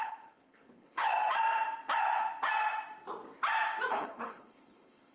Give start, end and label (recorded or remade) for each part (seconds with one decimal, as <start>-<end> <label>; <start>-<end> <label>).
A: 0.0-1.1 remade; 1.1-3.9 recorded; 3.9-5.1 remade